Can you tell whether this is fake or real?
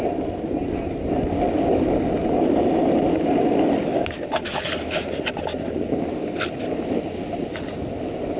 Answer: real